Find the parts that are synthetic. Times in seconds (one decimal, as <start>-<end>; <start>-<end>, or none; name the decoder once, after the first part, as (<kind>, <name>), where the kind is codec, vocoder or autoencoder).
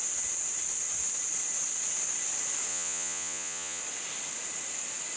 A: 2.7-3.8 (vocoder, Vocos)